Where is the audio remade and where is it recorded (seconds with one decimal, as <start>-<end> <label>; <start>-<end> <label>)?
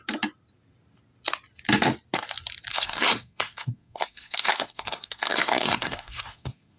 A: 0.0-2.7 recorded; 2.7-6.8 remade